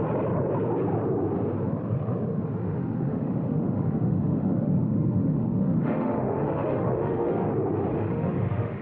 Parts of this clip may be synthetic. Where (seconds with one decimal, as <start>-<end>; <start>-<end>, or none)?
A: 2.6-7.5; 7.9-8.8